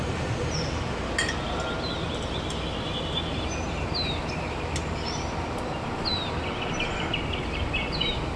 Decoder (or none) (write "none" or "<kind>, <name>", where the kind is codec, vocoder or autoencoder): none